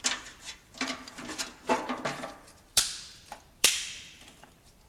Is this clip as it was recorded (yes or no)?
no